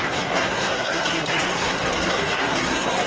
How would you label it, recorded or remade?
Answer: remade